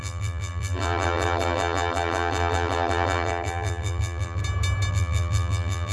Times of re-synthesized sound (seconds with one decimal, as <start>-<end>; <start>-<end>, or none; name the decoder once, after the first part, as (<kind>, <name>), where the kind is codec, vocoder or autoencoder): 0.0-4.4 (vocoder, BigVGAN v2); 4.9-5.9